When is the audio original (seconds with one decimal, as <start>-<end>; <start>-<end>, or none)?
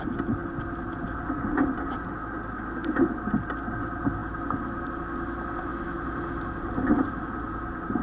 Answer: 0.0-8.0